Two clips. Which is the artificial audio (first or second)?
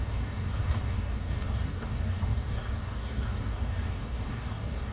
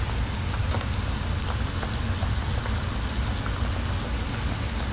first